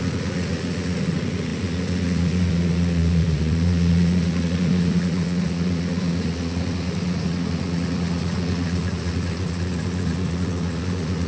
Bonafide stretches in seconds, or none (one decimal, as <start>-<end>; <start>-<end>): none